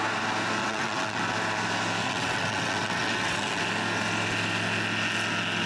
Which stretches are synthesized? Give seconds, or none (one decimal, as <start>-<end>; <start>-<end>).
0.6-1.2; 2.0-3.6